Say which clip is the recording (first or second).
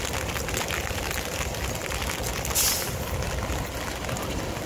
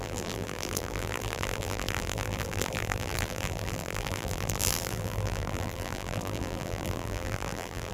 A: first